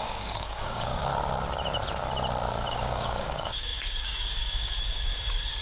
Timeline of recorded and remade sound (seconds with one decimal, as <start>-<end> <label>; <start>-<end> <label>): 0.0-1.1 remade; 1.1-2.7 recorded; 2.7-5.6 remade